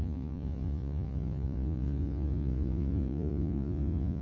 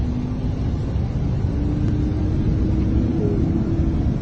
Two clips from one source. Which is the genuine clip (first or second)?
second